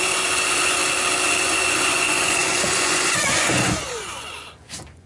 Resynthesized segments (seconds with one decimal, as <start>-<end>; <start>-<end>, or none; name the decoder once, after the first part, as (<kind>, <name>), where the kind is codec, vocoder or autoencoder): 0.0-0.8 (vocoder, Vocos); 1.4-5.1